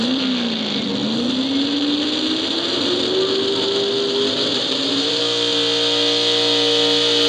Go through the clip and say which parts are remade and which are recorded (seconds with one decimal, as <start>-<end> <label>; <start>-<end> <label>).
0.0-4.5 recorded; 4.5-5.2 remade; 5.2-7.3 recorded